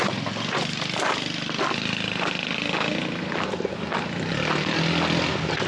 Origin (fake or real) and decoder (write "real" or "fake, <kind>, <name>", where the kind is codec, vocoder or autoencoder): real